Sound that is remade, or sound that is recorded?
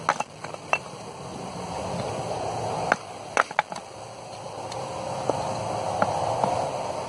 recorded